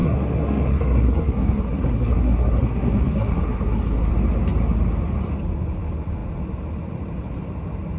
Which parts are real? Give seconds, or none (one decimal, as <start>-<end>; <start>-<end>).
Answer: 4.1-8.0